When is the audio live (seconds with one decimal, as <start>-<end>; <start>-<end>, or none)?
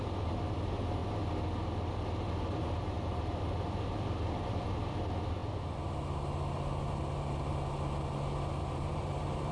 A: 1.0-2.6; 5.4-8.6